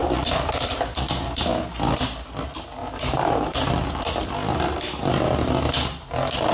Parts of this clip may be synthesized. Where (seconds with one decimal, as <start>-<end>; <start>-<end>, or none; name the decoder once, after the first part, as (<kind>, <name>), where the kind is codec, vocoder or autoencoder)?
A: 0.0-1.4 (vocoder, BigVGAN v2); 2.8-3.7